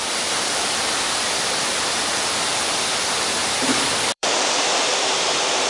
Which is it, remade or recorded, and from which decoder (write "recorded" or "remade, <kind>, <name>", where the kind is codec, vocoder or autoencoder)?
remade, vocoder, BigVGAN v2